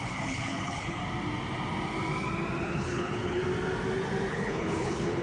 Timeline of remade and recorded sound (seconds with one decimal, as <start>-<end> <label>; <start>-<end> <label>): 0.0-1.0 remade; 1.0-2.6 recorded; 2.6-3.4 remade; 3.4-4.3 recorded; 4.3-5.2 remade